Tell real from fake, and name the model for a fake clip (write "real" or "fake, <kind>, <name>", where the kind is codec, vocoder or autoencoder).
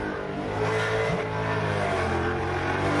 real